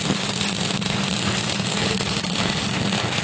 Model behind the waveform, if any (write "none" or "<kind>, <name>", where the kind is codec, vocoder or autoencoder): none